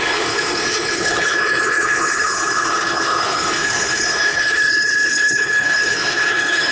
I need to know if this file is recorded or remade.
remade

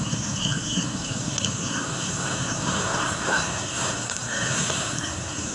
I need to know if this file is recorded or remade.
remade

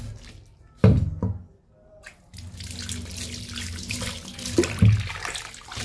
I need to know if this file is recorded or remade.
recorded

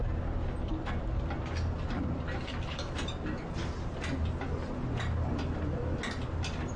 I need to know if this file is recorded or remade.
recorded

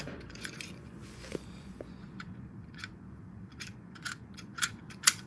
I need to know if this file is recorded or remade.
remade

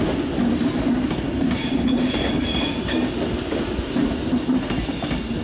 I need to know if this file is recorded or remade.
recorded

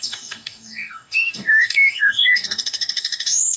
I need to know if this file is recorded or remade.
remade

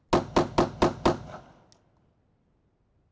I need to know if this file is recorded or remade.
recorded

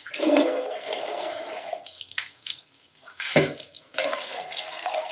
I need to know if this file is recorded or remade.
remade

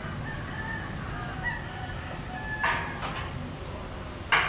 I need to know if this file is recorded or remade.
recorded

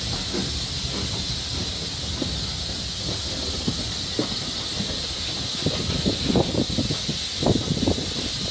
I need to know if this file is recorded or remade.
recorded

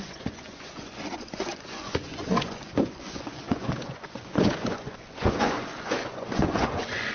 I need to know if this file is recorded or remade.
remade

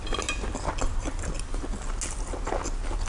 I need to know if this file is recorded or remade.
recorded